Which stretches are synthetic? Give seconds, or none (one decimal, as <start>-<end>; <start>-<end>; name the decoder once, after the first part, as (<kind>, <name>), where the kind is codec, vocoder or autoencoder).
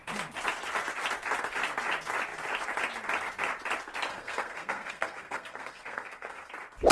4.1-6.5 (codec, SNAC)